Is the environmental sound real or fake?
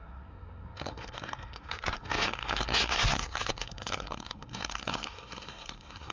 fake